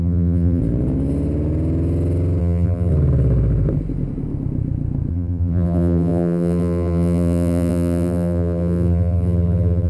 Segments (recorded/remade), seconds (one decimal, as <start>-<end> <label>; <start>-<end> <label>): 0.0-0.6 remade; 0.6-2.4 recorded; 2.4-2.9 remade; 2.9-5.1 recorded; 5.1-9.9 remade